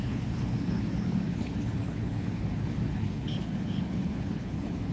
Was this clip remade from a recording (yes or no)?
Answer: yes